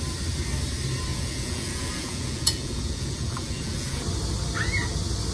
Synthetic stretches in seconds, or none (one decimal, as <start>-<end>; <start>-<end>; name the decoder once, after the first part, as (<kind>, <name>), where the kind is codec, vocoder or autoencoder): 1.1-4.0 (vocoder, Vocos)